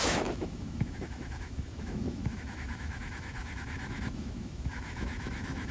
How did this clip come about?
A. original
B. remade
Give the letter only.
B